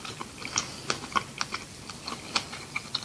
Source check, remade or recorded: recorded